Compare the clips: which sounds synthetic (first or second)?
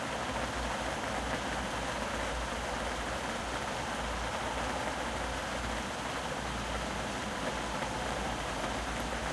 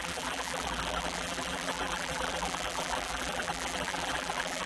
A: second